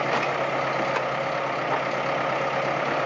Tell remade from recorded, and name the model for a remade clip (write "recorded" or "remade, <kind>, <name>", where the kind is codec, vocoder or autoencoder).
recorded